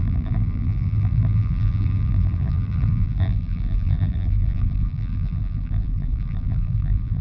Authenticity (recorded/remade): remade